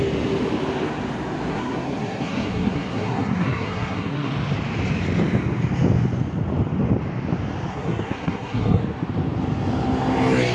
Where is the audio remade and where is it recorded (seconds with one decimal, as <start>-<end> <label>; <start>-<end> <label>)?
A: 0.0-1.5 recorded; 1.5-4.3 remade; 4.3-7.7 recorded; 7.7-8.8 remade; 8.8-10.5 recorded

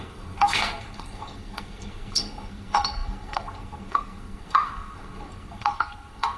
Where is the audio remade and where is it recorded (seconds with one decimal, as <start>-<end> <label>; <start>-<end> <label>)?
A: 0.0-6.4 remade

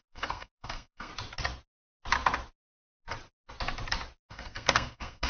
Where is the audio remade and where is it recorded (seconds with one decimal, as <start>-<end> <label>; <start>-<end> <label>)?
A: 0.0-1.1 remade; 1.1-4.3 recorded; 4.3-5.3 remade

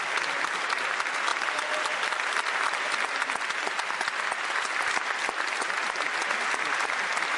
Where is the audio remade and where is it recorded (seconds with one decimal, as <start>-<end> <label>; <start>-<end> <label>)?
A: 0.0-7.4 recorded

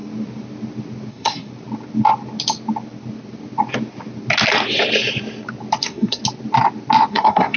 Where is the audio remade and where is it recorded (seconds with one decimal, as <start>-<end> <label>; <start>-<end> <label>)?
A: 0.0-1.1 recorded; 1.1-1.5 remade; 1.5-5.8 recorded; 5.8-6.2 remade; 6.2-7.1 recorded; 7.1-7.6 remade

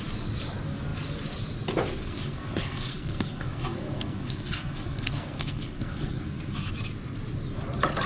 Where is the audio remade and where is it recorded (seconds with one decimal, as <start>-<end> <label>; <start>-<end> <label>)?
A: 0.0-2.0 recorded; 2.0-6.7 remade; 6.7-8.1 recorded

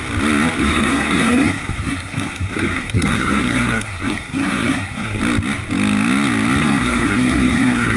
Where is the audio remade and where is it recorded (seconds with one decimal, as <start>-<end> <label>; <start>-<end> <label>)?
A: 0.0-0.6 recorded; 0.6-5.2 remade; 5.2-6.6 recorded; 6.6-8.0 remade